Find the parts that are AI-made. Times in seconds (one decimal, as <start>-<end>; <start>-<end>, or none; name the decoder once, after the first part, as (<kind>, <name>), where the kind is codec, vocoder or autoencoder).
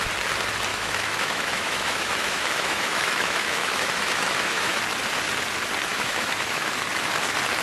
0.7-4.8 (autoencoder, DAC-VAE); 5.9-6.7